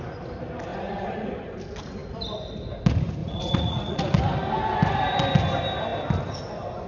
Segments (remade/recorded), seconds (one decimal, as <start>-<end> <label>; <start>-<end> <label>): 0.0-0.7 recorded; 0.7-1.3 remade; 1.3-3.2 recorded; 3.2-4.0 remade; 4.0-6.9 recorded